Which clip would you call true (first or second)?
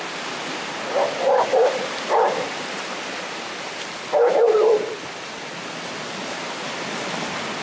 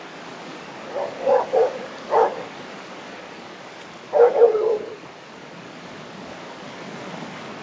first